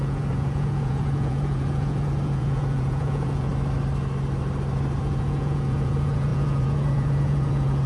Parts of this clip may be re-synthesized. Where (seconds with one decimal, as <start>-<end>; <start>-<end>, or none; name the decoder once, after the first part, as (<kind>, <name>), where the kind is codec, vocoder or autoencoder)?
0.0-3.5 (vocoder, Vocos); 5.0-7.9